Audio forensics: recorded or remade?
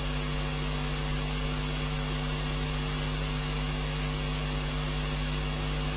recorded